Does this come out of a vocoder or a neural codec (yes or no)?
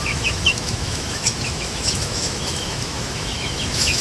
yes